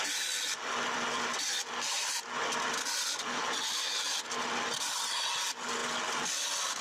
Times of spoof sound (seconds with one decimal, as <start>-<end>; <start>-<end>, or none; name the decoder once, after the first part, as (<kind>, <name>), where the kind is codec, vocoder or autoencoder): none